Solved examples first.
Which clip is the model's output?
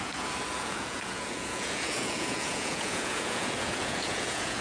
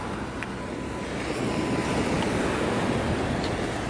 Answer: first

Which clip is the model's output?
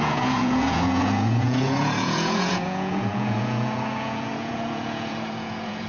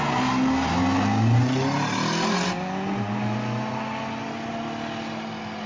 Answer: first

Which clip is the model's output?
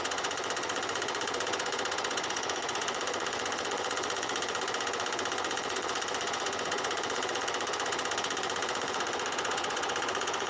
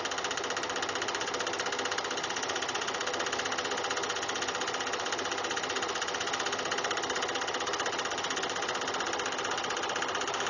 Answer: first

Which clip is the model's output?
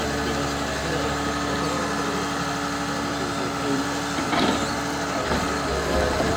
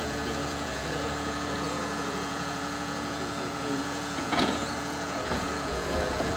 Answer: second